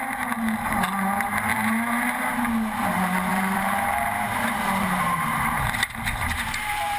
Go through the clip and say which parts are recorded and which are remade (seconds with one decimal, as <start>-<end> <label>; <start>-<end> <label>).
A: 0.0-1.5 recorded; 1.5-2.2 remade; 2.2-3.3 recorded; 3.3-7.0 remade